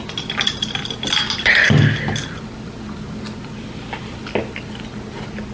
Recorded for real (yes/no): yes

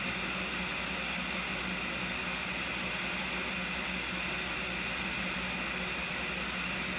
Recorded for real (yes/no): yes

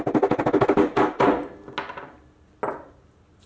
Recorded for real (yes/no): yes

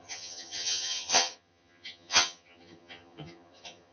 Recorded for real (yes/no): no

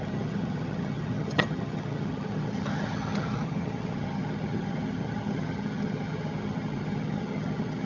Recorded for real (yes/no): no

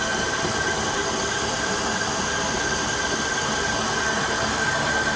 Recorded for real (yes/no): yes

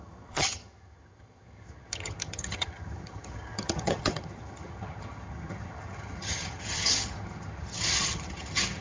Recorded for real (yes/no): no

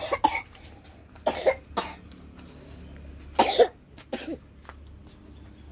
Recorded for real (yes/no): yes